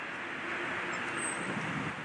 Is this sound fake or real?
real